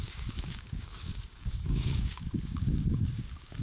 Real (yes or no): no